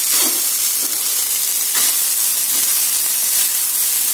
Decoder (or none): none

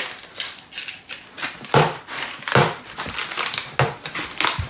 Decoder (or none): none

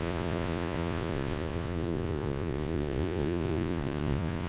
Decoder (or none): vocoder, Vocos